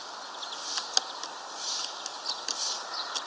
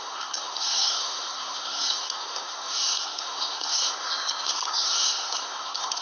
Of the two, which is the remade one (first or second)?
second